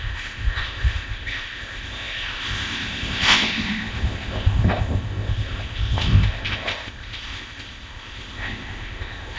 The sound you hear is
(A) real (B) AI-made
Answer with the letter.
B